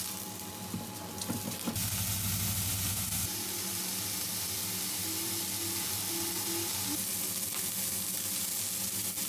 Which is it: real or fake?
real